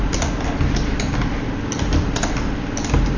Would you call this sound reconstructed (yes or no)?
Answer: no